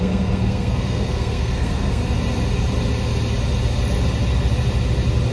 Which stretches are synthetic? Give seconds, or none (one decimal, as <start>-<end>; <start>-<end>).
0.0-2.0